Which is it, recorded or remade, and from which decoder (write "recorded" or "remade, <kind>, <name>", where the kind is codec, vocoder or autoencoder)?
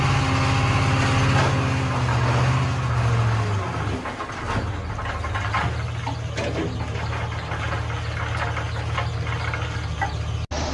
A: recorded